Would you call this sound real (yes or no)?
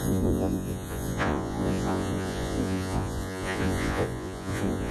no